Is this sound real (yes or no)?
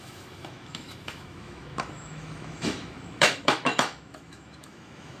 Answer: no